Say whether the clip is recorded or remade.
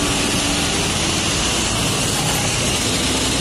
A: recorded